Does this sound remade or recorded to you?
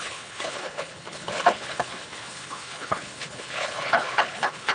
remade